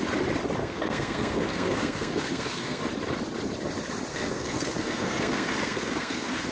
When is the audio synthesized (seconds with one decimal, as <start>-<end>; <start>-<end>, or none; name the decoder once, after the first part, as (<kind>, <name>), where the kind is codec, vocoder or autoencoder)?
0.6-2.8 (codec, SNAC); 4.1-6.5